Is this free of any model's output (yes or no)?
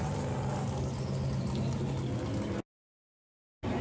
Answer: yes